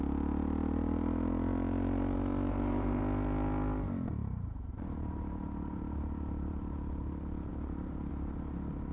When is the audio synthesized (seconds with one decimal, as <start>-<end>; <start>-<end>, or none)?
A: 2.5-3.0; 4.2-6.6; 7.5-8.1